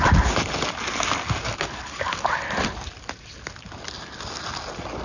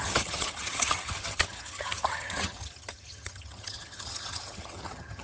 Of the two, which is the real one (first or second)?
first